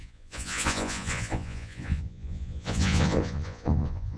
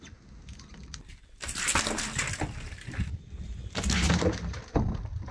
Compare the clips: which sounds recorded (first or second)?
second